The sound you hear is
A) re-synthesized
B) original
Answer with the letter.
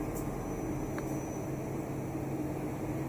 B